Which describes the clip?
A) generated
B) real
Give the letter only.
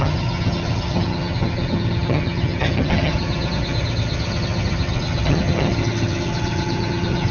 A